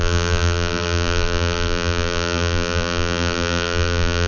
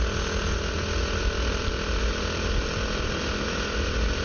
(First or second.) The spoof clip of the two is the first